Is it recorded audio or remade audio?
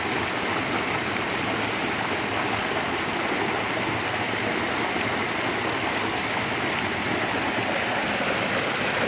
recorded